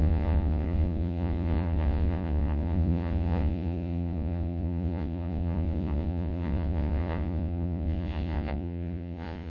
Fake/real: fake